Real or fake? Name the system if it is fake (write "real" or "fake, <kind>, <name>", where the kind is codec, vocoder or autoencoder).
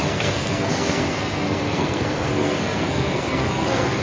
fake, codec, SNAC